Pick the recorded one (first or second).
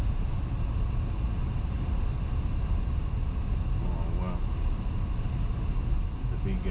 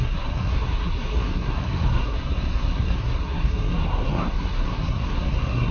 first